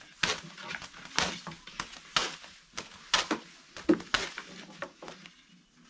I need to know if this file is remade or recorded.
recorded